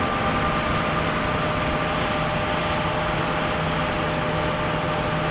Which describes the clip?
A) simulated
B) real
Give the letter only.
B